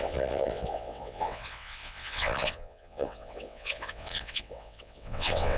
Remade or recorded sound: remade